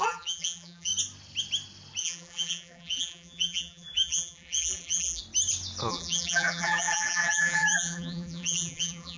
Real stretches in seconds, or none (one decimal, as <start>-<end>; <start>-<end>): 0.9-2.0; 5.2-5.9